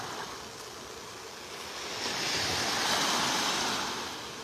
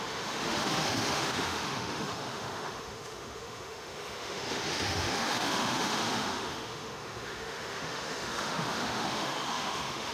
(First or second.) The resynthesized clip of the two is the second